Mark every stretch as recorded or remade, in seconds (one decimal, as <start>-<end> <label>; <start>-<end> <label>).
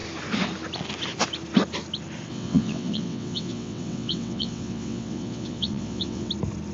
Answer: 0.0-2.3 recorded; 2.3-6.3 remade; 6.3-6.7 recorded